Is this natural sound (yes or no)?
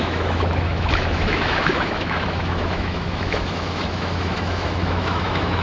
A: no